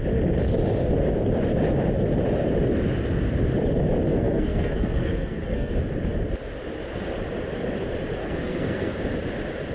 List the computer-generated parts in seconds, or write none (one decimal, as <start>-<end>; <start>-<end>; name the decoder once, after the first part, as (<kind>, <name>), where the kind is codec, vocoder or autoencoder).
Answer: 4.1-5.7 (codec, SNAC); 8.2-9.0